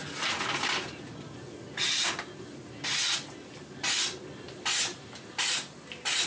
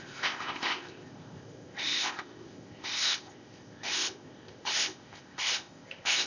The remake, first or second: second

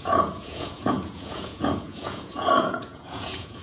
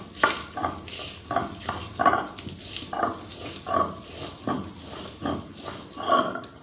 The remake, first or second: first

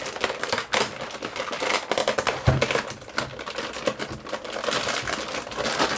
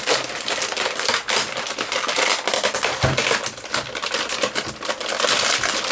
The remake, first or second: second